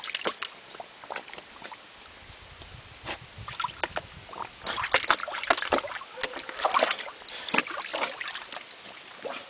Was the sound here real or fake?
real